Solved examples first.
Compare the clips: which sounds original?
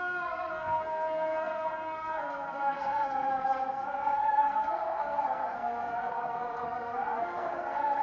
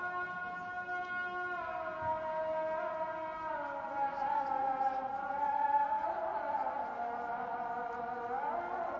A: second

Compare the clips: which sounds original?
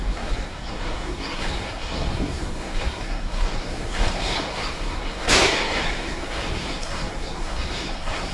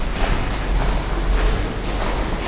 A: second